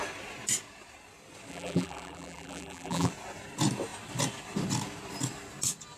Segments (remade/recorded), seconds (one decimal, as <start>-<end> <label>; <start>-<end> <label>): 0.0-1.5 recorded; 1.5-3.1 remade; 3.1-6.0 recorded